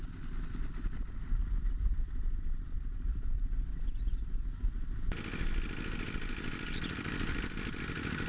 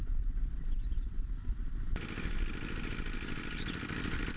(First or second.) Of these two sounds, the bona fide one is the first